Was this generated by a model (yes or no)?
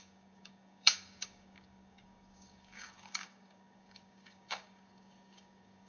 yes